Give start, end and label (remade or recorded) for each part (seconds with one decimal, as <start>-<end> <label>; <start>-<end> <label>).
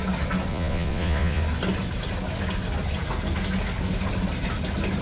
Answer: 0.0-0.5 recorded; 0.5-1.4 remade; 1.4-5.0 recorded